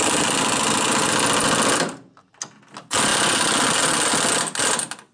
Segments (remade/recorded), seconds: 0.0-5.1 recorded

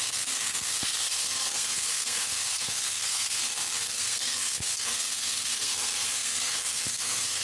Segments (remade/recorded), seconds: 0.0-7.4 remade

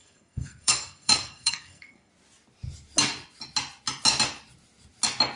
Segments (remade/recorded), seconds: 0.0-2.1 remade; 2.1-5.4 recorded